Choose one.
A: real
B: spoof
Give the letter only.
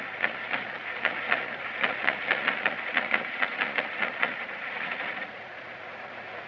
B